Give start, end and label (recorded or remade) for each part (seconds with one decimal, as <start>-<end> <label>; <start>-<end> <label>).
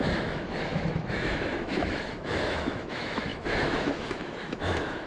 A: 0.0-5.1 remade